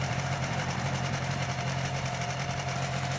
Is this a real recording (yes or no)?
no